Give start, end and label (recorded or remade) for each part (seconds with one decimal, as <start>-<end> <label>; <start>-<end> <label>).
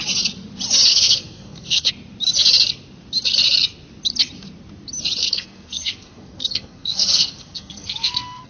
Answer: 0.0-0.9 recorded; 0.9-1.9 remade; 1.9-5.2 recorded; 5.2-8.5 remade